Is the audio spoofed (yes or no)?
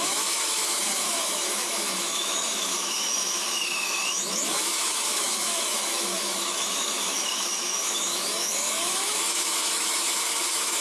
yes